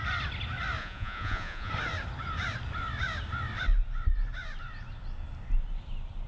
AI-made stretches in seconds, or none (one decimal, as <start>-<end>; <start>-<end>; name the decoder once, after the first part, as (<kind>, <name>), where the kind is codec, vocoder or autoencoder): 0.8-1.7 (vocoder, Vocos)